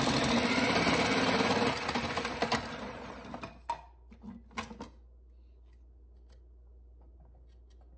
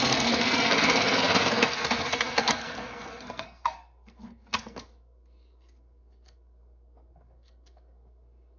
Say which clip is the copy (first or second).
second